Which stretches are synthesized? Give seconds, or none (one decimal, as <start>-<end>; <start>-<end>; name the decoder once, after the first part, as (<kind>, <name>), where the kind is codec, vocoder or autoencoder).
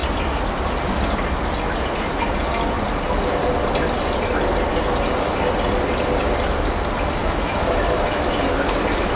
7.2-8.4 (autoencoder, DAC-VAE)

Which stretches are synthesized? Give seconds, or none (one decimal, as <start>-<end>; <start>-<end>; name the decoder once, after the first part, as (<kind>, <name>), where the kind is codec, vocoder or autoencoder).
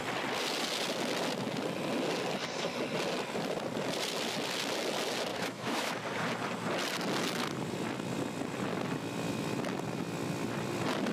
5.3-5.9 (autoencoder, DAC-VAE)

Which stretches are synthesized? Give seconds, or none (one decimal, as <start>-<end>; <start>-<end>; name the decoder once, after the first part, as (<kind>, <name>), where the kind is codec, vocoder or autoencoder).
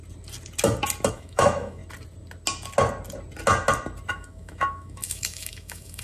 1.1-1.8 (autoencoder, DAC-VAE); 4.1-6.0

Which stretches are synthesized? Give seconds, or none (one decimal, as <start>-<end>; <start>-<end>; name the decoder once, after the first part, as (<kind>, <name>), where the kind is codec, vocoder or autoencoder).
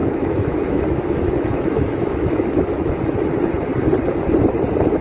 0.0-3.0 (autoencoder, DAC-VAE)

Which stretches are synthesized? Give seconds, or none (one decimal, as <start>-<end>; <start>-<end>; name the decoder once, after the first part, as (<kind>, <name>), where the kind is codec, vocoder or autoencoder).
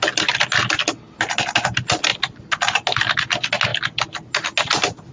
none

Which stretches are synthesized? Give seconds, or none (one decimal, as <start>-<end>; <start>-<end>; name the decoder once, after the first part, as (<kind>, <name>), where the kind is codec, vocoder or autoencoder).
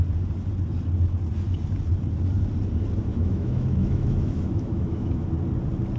3.1-5.3 (autoencoder, DAC-VAE)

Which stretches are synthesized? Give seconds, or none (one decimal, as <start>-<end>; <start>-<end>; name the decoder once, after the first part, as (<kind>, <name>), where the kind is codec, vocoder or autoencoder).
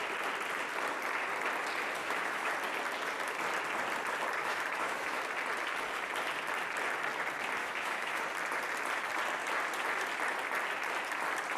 2.0-2.5 (autoencoder, DAC-VAE); 4.4-5.2; 7.6-8.2